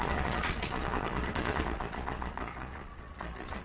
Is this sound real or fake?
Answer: fake